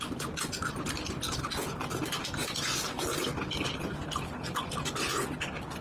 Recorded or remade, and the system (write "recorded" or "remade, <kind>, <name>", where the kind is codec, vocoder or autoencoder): recorded